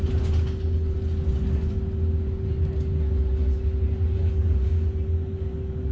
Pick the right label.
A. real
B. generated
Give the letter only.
A